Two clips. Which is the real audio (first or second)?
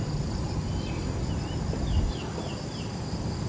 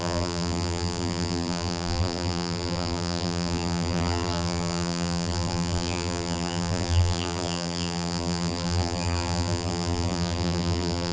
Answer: first